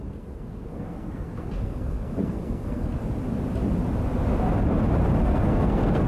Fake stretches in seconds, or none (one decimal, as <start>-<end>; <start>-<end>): 0.0-3.0; 5.2-6.1